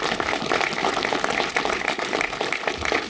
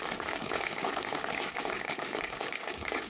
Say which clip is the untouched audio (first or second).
first